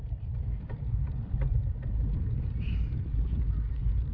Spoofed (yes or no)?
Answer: no